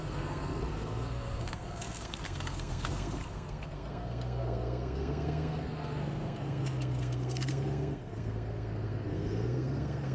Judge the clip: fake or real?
fake